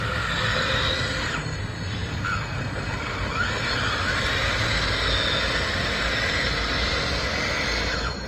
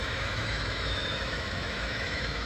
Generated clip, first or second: second